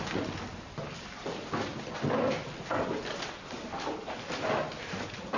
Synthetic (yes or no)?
no